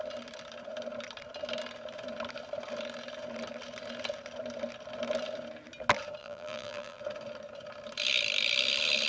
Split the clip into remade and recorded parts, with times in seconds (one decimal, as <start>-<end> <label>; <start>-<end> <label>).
0.0-6.2 recorded; 6.2-7.0 remade; 7.0-9.1 recorded